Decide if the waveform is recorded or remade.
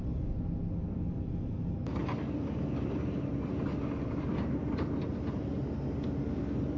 recorded